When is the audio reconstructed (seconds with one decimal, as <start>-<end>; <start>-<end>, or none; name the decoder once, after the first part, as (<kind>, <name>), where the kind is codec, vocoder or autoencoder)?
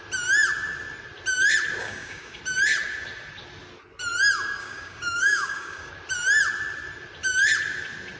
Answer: 1.8-2.4 (codec, DAC); 4.6-5.9